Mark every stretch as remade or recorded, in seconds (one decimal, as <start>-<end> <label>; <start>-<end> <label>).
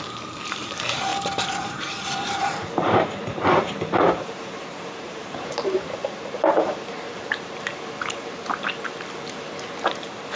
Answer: 0.0-1.1 remade; 1.1-1.7 recorded; 1.7-7.7 remade; 7.7-9.9 recorded; 9.9-10.4 remade